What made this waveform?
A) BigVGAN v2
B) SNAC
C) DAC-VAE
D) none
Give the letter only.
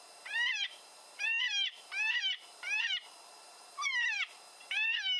A